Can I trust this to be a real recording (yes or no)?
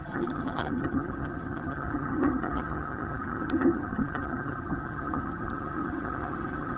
no